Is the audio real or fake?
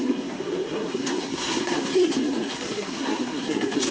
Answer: fake